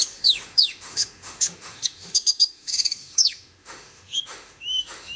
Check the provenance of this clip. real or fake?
fake